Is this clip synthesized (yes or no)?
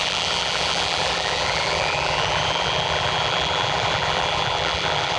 yes